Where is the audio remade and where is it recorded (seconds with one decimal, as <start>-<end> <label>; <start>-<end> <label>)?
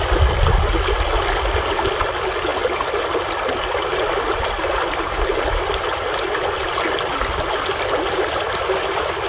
0.0-9.3 recorded